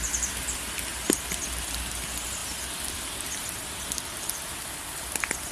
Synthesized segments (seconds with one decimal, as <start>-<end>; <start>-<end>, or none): none